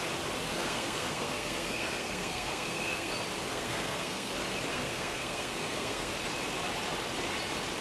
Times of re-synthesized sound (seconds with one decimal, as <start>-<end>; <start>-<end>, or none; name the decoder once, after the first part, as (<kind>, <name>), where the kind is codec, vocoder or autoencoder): 0.5-3.1 (codec, SNAC); 3.5-4.3; 4.7-6.1